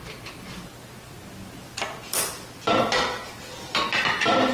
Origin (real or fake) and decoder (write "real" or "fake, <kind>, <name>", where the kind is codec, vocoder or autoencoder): fake, vocoder, BigVGAN v2